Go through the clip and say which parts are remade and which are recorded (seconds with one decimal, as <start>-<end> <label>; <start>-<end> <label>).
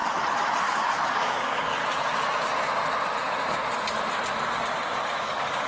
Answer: 0.0-0.6 recorded; 0.6-1.8 remade; 1.8-5.2 recorded; 5.2-5.7 remade